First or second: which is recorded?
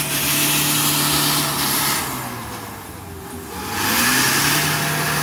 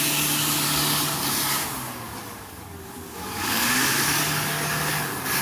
first